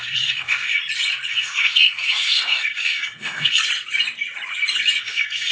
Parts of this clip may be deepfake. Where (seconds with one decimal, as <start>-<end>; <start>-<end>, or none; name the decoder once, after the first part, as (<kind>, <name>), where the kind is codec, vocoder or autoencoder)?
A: 0.0-0.8 (codec, SNAC); 1.3-3.6; 5.0-5.5